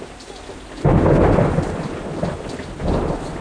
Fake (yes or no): no